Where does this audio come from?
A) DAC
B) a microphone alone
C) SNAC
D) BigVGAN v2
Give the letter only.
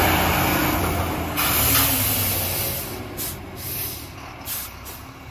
B